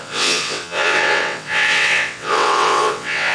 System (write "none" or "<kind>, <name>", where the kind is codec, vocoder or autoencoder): vocoder, WaveNeXt